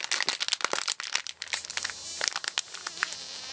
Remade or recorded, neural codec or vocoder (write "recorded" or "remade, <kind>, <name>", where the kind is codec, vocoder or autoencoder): recorded